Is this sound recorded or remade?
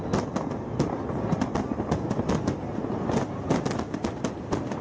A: recorded